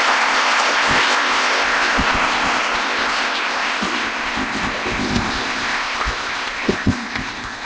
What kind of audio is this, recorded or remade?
remade